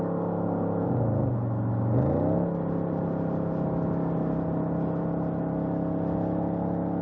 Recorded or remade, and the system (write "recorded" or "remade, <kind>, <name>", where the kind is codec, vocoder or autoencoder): recorded